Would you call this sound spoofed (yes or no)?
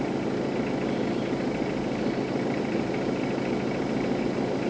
no